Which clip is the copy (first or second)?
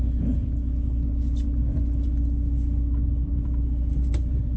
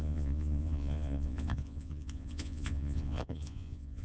second